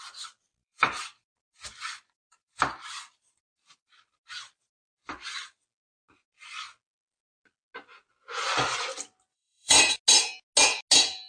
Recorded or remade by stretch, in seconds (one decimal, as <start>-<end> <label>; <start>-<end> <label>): 0.0-0.6 recorded; 0.6-4.8 remade; 4.8-9.3 recorded; 9.3-9.9 remade; 9.9-11.3 recorded